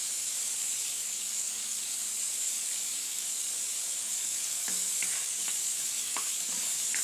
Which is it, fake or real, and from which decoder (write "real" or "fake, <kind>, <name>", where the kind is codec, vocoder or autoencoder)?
fake, codec, DAC